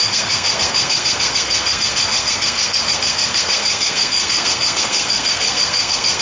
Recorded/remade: remade